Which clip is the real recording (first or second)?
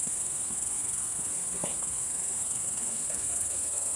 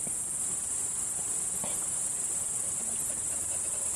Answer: second